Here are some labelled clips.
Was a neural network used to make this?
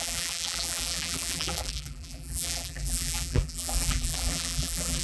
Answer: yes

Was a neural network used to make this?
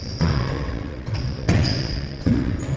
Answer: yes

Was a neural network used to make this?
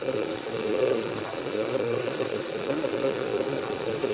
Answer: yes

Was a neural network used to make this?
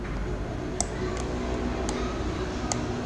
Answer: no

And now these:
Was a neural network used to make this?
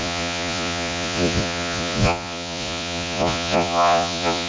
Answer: yes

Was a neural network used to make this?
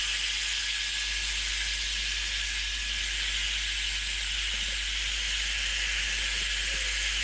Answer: no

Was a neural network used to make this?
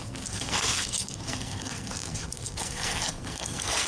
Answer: yes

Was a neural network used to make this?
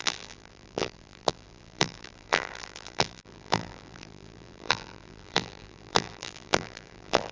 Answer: yes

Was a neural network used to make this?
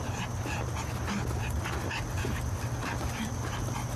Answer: no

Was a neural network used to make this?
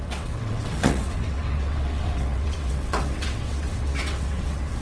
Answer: yes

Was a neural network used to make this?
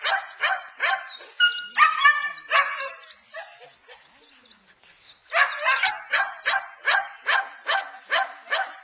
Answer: no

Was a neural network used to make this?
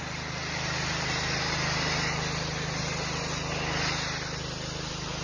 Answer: no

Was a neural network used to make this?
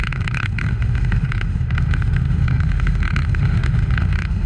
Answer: yes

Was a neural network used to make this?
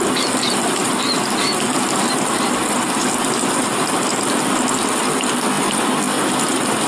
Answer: no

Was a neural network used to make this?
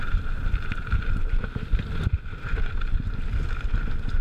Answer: yes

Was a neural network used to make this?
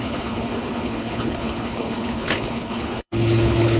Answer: yes